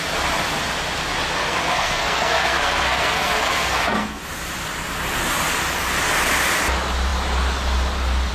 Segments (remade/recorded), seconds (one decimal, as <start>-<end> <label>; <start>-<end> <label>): 0.0-1.4 recorded; 1.4-4.2 remade; 4.2-8.3 recorded